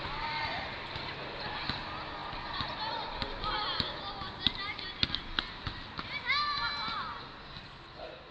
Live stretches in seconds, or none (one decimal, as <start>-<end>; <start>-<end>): 0.0-8.3